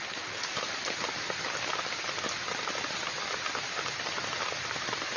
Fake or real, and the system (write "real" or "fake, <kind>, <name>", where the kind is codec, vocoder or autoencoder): real